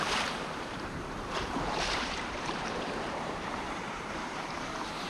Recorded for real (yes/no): no